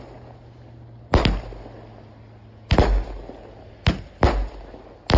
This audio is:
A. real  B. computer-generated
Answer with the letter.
A